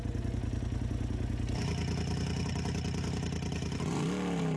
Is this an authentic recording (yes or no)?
yes